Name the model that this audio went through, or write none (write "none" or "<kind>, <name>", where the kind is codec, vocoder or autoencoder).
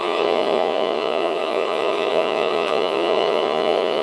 vocoder, Vocos